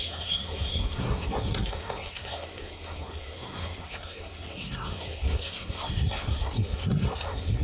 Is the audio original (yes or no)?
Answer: no